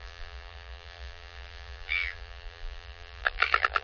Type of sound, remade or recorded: remade